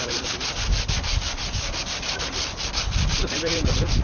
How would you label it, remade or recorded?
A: recorded